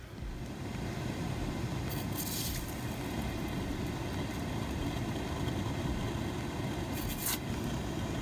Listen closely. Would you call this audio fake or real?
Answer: real